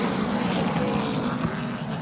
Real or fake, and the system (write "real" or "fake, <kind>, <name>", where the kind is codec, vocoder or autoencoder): real